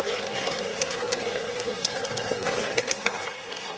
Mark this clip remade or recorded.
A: remade